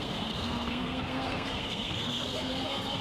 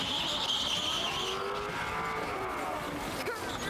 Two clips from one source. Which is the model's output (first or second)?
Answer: first